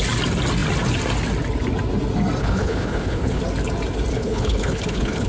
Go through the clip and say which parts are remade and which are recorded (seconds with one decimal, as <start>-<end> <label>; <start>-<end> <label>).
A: 0.0-2.4 recorded; 2.4-3.4 remade; 3.4-4.1 recorded; 4.1-5.3 remade